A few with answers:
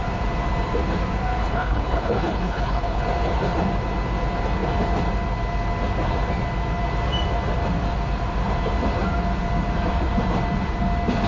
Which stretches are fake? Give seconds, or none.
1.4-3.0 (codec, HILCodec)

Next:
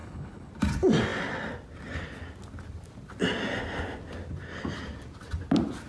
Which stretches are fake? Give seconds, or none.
0.0-0.5 (codec, HILCodec)

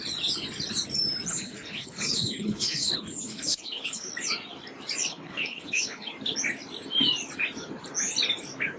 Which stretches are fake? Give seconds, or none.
1.3-4.1 (codec, HILCodec); 5.1-6.1

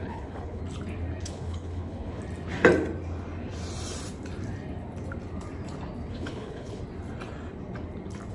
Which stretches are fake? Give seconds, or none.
0.0-0.6 (codec, HILCodec); 1.2-2.2; 6.1-6.8

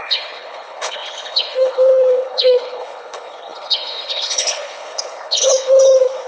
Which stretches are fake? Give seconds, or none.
0.0-6.3 (codec, HILCodec)

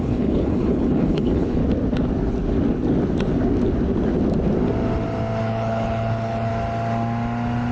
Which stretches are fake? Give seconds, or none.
0.0-1.6 (codec, HILCodec); 5.4-6.5

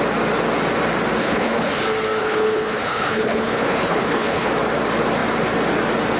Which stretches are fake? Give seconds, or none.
1.2-1.8 (codec, HILCodec); 2.2-4.5